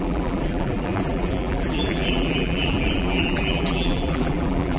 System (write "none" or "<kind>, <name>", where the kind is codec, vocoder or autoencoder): vocoder, BigVGAN v2